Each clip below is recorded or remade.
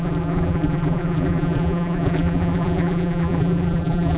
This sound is remade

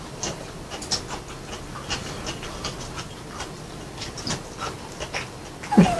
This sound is recorded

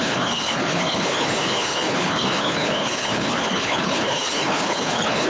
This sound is remade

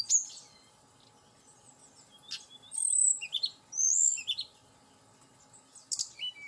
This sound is recorded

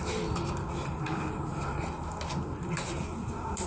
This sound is recorded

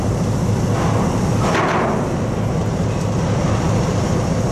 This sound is recorded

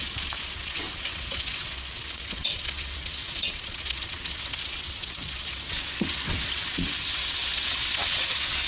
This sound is remade